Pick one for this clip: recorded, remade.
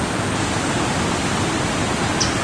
recorded